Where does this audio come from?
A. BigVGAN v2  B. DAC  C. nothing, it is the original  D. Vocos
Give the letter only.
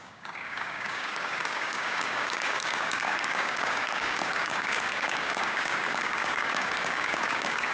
B